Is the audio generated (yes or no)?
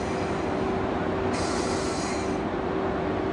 no